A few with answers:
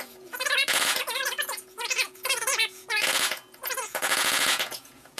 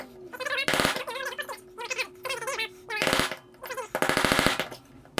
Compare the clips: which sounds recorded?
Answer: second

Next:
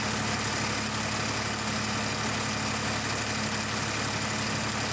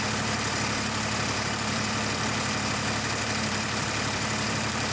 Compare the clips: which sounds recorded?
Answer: first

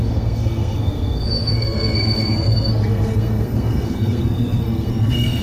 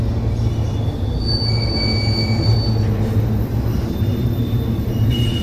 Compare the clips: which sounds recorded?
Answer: second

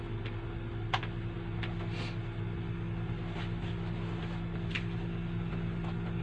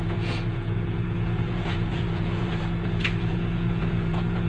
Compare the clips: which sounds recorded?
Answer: first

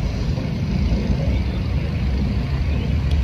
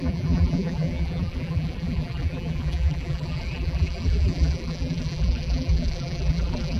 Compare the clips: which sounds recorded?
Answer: first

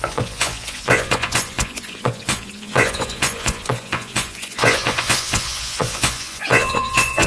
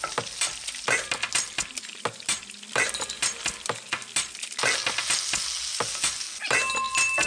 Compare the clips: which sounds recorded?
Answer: second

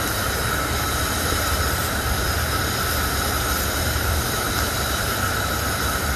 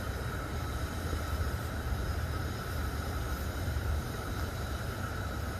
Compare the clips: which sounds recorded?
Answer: first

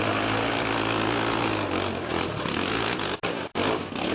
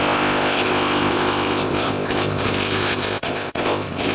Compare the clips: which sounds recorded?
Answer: first